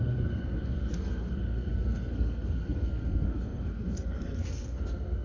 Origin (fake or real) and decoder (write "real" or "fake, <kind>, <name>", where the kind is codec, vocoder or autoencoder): fake, codec, SNAC